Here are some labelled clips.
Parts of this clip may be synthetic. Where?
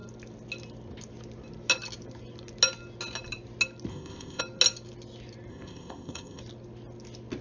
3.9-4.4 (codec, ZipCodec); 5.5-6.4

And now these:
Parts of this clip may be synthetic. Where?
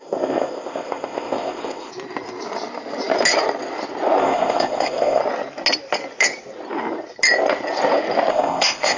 0.0-1.9 (codec, ZipCodec); 4.2-5.2; 8.3-9.0